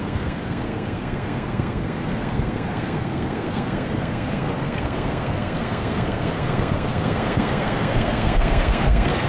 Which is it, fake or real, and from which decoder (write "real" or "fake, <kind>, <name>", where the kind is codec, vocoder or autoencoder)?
fake, codec, SNAC